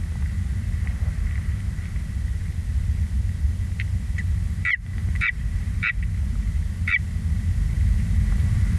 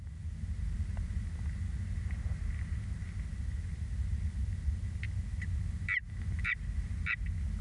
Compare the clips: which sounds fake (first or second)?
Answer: first